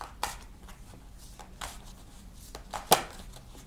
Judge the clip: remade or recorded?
recorded